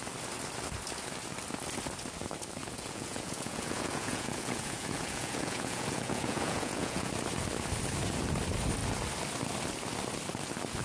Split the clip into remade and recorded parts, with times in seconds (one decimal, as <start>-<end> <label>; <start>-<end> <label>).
0.0-2.6 recorded; 2.6-7.1 remade; 7.1-10.8 recorded